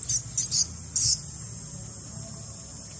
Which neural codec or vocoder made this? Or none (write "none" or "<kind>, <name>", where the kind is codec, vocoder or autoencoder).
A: none